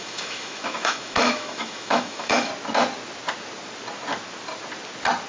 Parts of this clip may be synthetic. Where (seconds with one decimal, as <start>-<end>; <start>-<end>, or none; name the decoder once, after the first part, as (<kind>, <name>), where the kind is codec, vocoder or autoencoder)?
0.0-2.5 (autoencoder, DAC-VAE)